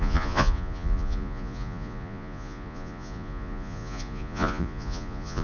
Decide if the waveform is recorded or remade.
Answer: remade